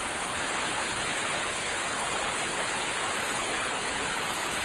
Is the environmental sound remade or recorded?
remade